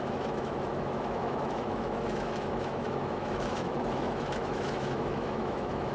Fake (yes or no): yes